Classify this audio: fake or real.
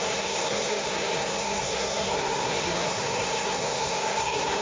fake